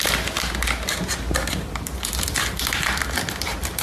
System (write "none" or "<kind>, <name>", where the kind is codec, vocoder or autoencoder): none